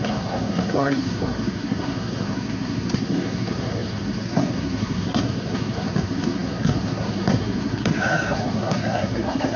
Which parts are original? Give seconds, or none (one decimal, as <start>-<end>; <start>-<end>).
none